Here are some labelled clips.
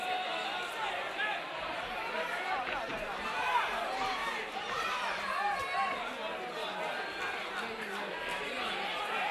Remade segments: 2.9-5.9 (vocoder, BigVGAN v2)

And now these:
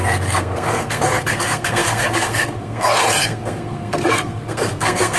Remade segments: 0.0-5.2 (codec, SNAC)

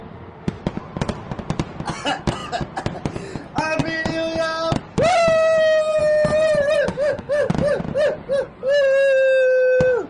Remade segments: 0.0-0.6 (autoencoder, DAC-VAE); 6.9-7.5

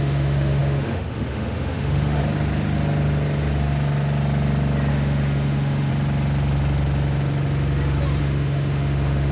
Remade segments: 0.0-2.2 (autoencoder, DAC-VAE); 4.9-5.9; 8.2-9.3